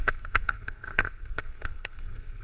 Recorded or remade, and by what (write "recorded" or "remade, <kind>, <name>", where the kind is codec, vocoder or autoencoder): remade, codec, SNAC